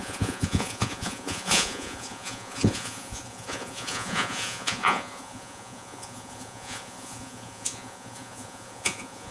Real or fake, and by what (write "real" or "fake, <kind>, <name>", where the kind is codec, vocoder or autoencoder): fake, vocoder, Vocos